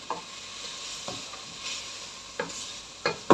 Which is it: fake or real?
real